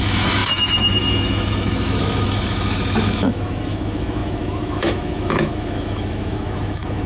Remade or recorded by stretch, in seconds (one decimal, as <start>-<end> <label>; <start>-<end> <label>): 0.0-7.1 remade